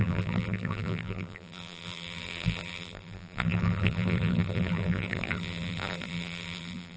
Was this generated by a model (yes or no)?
yes